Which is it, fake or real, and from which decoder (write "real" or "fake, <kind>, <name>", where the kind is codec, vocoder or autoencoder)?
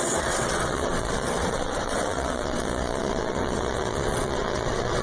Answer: fake, vocoder, WaveNeXt